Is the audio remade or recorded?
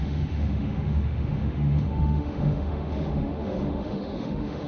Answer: remade